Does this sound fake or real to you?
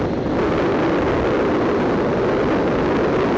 real